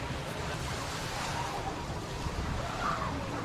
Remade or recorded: remade